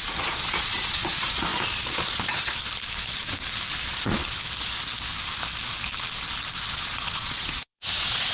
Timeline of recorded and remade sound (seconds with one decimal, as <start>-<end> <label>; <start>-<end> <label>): 0.0-2.6 remade; 2.6-3.8 recorded; 3.8-4.2 remade; 4.2-6.7 recorded; 6.7-8.3 remade